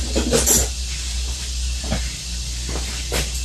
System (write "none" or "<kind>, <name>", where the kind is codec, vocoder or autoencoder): none